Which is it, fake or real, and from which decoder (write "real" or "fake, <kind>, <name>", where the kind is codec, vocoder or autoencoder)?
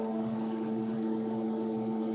fake, codec, DAC